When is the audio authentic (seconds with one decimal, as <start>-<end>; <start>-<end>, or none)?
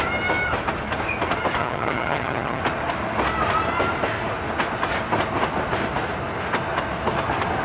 0.0-1.6; 2.6-7.6